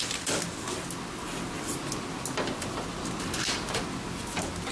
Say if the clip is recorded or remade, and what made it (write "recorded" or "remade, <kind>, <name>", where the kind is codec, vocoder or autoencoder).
recorded